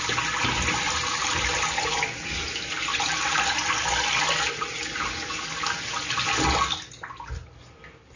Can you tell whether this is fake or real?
real